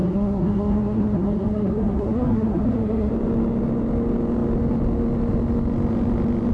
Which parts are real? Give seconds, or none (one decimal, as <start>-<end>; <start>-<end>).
3.1-6.5

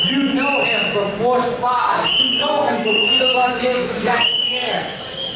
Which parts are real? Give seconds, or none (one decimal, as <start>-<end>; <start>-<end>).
0.0-1.8; 5.0-5.4

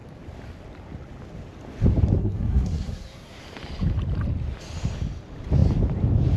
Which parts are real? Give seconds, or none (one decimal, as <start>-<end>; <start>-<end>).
0.0-2.2; 3.4-6.4

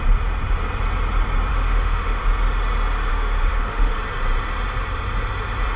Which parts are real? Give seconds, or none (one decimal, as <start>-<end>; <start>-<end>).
0.0-1.5; 2.2-3.1; 4.0-5.8

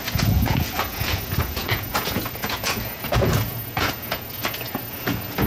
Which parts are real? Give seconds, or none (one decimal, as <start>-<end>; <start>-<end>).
none

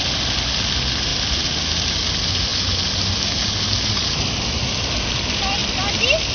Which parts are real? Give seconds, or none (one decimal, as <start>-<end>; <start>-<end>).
0.0-6.3